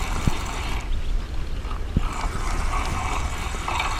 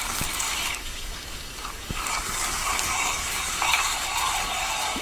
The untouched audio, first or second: first